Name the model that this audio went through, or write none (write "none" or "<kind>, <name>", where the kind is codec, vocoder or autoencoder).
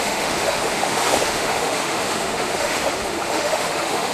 autoencoder, DAC-VAE